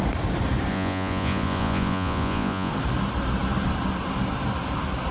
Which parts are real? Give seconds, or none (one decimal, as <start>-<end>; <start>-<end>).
0.0-0.7; 2.7-5.1